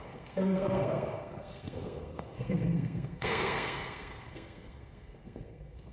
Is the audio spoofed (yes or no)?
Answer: yes